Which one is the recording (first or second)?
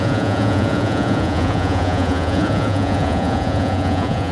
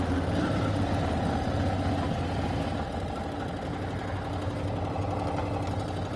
second